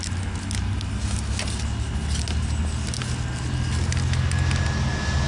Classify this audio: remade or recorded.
recorded